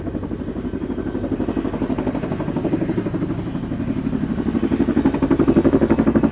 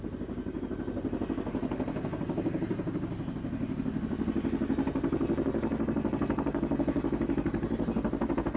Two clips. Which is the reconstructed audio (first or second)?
first